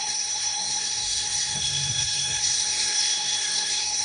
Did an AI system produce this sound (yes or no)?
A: yes